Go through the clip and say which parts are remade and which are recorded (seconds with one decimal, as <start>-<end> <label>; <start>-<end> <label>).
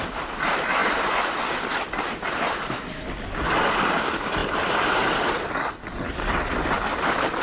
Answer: 0.0-7.4 recorded